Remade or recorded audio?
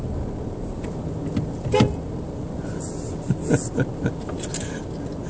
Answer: recorded